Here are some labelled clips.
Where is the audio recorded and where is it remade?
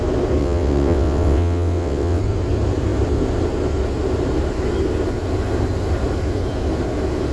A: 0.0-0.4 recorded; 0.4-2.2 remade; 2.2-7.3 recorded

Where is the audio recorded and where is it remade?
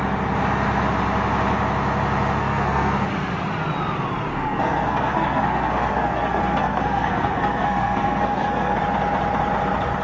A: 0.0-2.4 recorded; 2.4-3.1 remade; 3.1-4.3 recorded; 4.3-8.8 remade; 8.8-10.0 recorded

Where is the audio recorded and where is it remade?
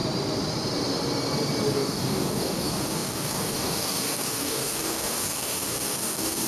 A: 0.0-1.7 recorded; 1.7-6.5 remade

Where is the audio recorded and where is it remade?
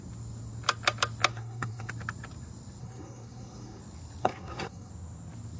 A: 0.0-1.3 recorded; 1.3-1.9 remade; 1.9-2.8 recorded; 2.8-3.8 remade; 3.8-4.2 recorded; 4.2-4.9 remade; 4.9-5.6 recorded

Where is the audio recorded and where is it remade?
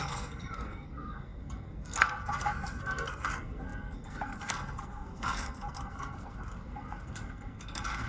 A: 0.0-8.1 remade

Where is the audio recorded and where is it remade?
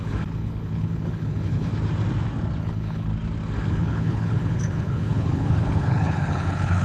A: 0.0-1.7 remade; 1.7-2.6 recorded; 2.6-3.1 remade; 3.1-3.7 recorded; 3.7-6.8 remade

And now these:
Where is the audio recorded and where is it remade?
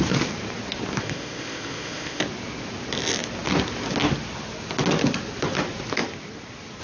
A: 0.0-1.0 recorded; 1.0-2.2 remade; 2.2-6.8 recorded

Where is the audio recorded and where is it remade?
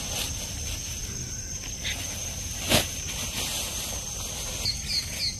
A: 0.0-5.4 recorded